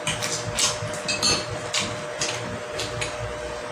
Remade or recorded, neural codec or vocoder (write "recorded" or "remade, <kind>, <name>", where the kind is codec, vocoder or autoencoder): recorded